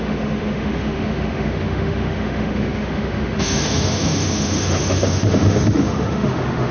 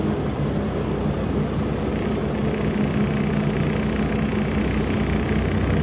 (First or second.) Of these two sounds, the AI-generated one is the first